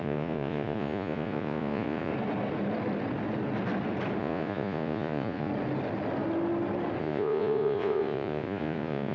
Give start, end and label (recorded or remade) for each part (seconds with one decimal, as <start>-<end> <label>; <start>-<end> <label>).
0.0-2.1 remade; 2.1-4.2 recorded; 4.2-5.5 remade; 5.5-7.0 recorded; 7.0-9.1 remade